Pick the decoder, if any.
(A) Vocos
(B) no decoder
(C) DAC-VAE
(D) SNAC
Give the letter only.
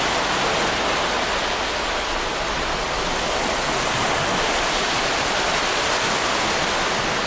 B